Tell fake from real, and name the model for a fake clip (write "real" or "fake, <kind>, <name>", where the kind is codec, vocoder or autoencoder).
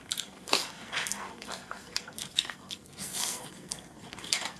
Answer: fake, codec, SNAC